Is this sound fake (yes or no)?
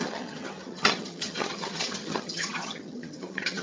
yes